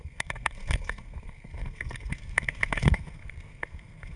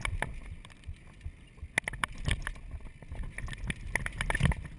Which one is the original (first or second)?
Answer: second